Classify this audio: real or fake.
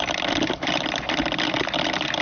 real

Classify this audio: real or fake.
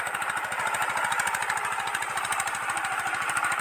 real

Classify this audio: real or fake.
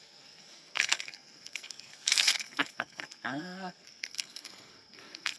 fake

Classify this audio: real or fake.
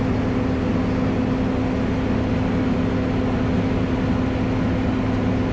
real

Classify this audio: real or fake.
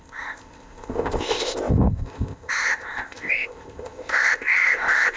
fake